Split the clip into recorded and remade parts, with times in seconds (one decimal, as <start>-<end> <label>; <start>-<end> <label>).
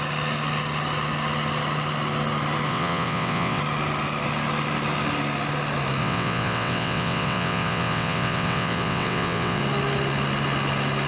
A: 0.0-2.7 recorded; 2.7-3.6 remade; 3.6-6.0 recorded; 6.0-9.6 remade; 9.6-11.1 recorded